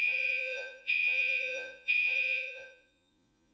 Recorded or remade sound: remade